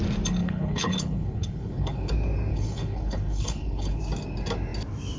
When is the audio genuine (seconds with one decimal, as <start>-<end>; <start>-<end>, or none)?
0.0-0.4; 2.1-2.5; 4.0-5.2

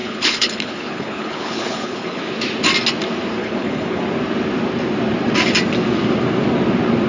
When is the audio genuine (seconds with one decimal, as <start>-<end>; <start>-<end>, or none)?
2.2-3.4; 4.0-7.1

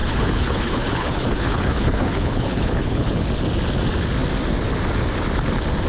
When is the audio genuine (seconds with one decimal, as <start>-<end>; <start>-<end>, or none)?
3.3-5.9